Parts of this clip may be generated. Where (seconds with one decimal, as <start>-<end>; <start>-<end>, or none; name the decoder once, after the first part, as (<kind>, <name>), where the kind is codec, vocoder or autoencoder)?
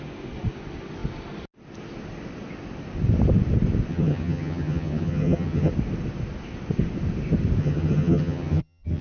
3.9-5.7 (vocoder, HiFi-GAN); 7.6-9.0